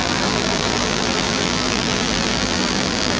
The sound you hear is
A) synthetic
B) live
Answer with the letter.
A